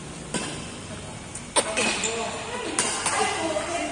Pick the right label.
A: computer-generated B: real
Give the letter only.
B